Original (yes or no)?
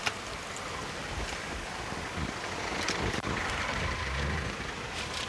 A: yes